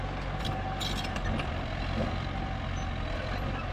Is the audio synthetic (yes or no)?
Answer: no